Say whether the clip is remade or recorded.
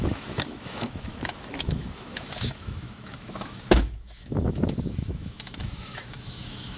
remade